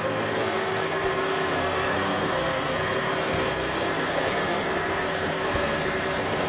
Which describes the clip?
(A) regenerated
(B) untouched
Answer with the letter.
A